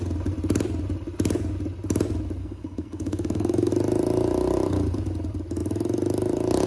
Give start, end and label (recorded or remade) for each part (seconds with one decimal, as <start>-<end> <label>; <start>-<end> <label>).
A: 0.0-2.4 recorded; 2.4-3.7 remade; 3.7-6.7 recorded